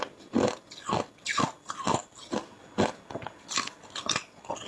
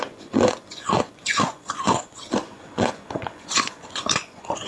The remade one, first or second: second